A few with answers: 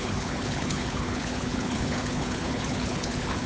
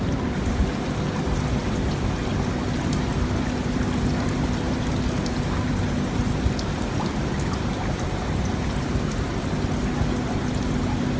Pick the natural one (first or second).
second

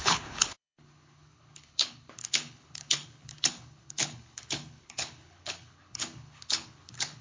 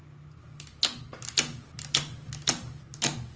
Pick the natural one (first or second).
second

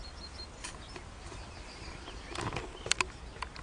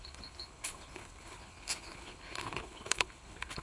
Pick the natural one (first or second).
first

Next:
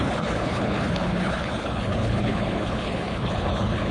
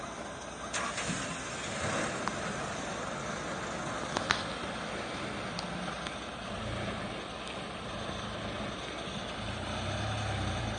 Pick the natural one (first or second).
second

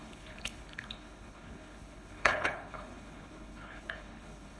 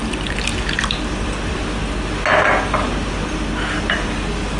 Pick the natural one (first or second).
second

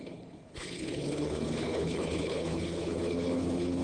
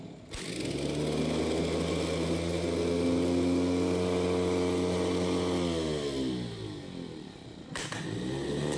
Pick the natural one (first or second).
second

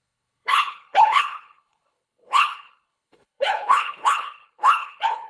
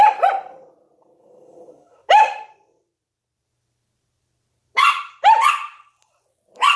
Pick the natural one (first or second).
second